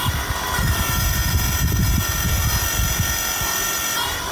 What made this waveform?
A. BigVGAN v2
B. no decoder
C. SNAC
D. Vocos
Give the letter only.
B